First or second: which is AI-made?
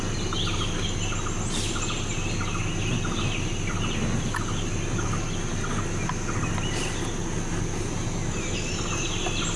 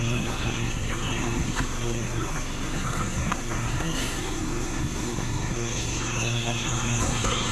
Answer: second